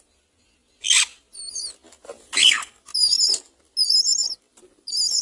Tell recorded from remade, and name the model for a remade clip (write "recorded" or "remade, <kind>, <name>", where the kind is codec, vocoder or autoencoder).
recorded